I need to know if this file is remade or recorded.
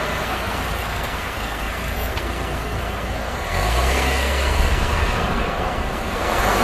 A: remade